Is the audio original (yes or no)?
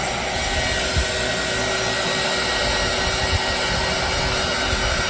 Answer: yes